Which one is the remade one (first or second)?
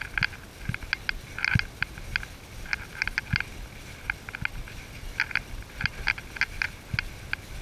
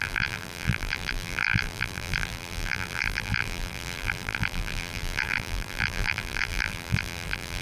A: second